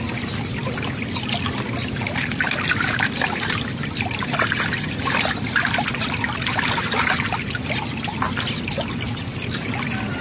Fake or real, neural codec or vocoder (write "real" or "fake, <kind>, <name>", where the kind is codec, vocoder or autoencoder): real